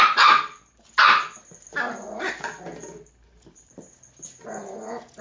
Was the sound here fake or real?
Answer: real